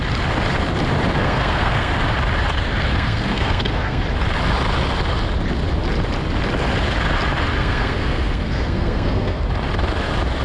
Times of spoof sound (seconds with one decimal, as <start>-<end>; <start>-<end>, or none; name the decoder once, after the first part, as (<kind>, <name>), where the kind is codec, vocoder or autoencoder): 1.2-1.9 (codec, SNAC); 2.9-4.0; 7.6-9.4